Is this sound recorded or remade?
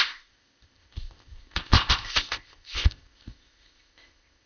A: remade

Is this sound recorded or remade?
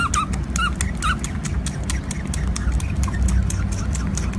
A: recorded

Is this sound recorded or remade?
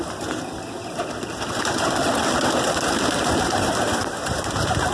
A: recorded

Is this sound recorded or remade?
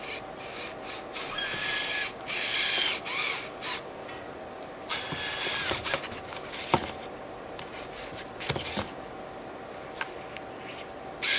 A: recorded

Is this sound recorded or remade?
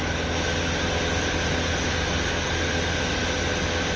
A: recorded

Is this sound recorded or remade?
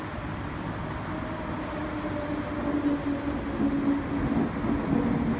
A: recorded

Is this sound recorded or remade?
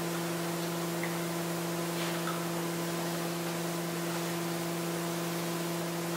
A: recorded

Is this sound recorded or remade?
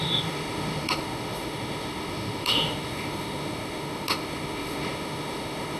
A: remade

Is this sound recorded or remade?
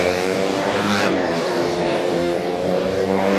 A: remade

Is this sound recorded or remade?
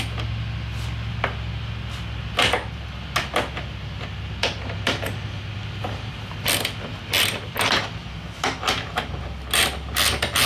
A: recorded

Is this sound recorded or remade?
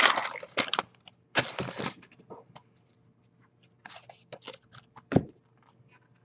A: recorded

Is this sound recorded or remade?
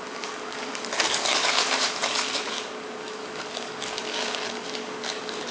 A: remade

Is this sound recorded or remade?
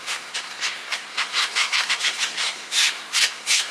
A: remade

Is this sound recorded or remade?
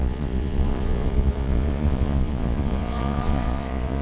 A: remade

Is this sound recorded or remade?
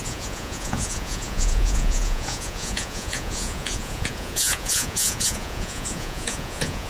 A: remade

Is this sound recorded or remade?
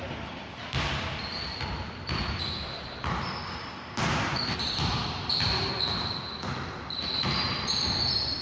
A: remade